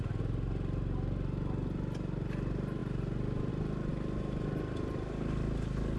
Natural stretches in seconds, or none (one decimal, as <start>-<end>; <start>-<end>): 0.0-6.0